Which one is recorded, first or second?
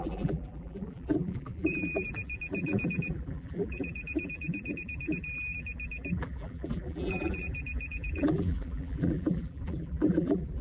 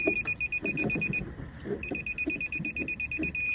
second